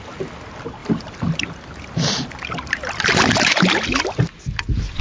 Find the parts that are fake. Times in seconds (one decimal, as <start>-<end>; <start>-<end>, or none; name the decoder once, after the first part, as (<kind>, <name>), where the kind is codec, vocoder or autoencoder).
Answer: 0.8-3.1 (vocoder, BigVGAN v2)